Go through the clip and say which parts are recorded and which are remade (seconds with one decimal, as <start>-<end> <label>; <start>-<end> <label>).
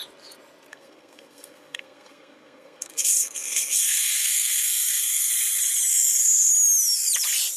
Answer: 0.0-0.7 recorded; 0.7-5.3 remade; 5.3-5.9 recorded; 5.9-6.5 remade; 6.5-7.6 recorded